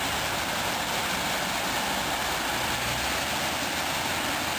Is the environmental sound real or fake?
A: real